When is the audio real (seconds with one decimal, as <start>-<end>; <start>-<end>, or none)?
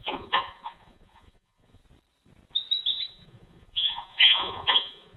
1.8-3.1